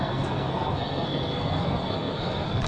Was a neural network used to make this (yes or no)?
yes